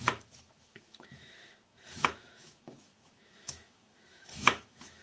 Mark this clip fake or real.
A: fake